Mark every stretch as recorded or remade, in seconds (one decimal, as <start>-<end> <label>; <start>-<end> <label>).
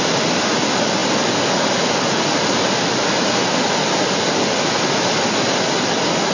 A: 0.0-6.3 recorded